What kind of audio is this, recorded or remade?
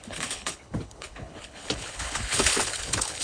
remade